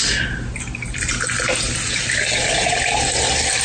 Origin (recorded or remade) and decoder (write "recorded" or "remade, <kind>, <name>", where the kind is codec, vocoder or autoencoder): recorded